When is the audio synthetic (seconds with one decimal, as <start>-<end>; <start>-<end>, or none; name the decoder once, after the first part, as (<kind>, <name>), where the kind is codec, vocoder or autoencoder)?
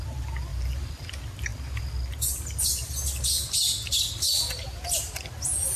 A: none